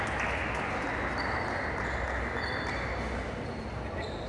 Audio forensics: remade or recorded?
recorded